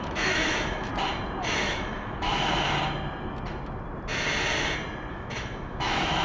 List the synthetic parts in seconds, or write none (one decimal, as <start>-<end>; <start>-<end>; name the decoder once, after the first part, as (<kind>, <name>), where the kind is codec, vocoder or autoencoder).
0.0-0.9 (autoencoder, DAC-VAE); 1.4-2.3; 5.1-6.2